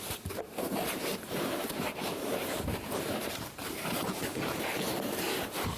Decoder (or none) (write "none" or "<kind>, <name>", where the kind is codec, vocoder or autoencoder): vocoder, BigVGAN v2